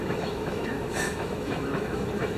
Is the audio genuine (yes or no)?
no